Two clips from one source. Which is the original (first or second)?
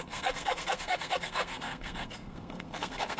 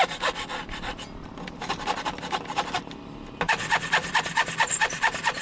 second